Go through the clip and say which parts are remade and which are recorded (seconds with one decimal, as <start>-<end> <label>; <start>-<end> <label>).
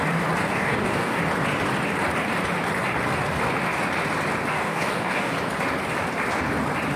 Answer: 0.0-0.4 recorded; 0.4-1.2 remade; 1.2-4.5 recorded; 4.5-5.3 remade; 5.3-7.0 recorded